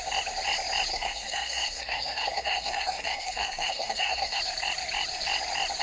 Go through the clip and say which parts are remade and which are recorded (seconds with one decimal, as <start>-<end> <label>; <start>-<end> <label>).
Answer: 0.0-0.9 recorded; 0.9-4.4 remade; 4.4-5.8 recorded